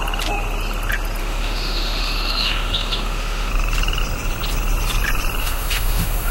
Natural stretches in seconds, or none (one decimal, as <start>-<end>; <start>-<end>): 0.0-1.2; 3.5-5.4